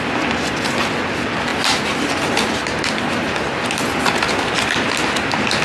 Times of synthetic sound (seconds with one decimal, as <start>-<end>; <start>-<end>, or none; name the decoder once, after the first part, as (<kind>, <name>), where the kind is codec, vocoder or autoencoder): none